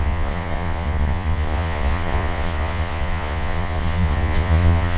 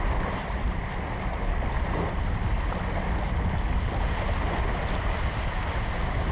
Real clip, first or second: second